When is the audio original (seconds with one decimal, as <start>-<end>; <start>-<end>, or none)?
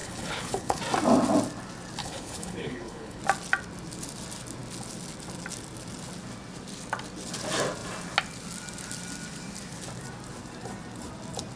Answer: 0.8-2.0; 3.2-11.6